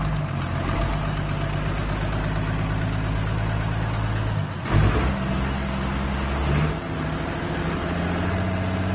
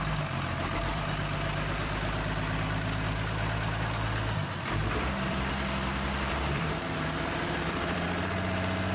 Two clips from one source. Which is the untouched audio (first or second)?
first